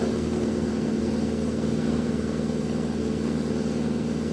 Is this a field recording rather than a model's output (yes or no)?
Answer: no